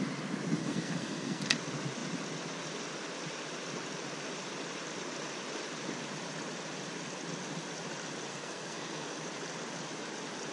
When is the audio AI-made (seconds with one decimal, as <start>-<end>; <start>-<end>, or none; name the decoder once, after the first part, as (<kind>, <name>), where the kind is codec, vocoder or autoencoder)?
0.6-1.4 (codec, SNAC); 8.3-9.2